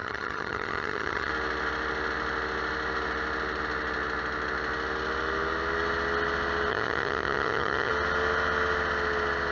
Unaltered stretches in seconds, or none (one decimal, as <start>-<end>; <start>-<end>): 1.3-6.7; 7.9-9.5